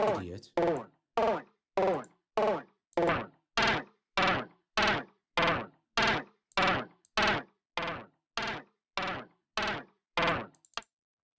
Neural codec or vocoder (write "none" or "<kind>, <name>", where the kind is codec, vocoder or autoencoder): none